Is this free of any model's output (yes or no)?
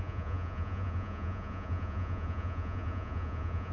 no